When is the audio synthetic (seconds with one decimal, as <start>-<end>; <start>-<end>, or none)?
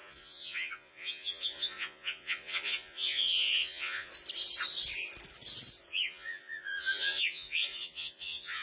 0.0-4.1; 5.9-8.6